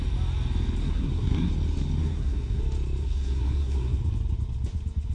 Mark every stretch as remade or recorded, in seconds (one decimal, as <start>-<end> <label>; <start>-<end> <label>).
0.0-0.8 recorded; 0.8-1.5 remade; 1.5-2.0 recorded; 2.0-2.6 remade; 2.6-3.0 recorded; 3.0-4.0 remade; 4.0-5.1 recorded